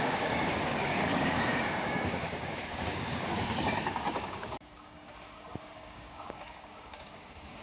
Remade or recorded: remade